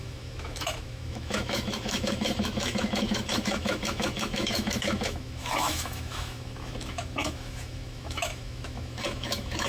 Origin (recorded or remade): remade